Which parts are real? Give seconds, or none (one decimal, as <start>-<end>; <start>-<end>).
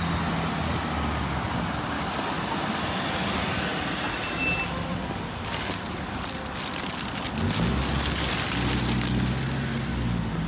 0.0-10.5